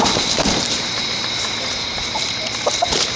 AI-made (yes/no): yes